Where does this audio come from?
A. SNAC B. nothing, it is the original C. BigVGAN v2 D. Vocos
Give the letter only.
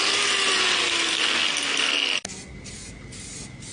B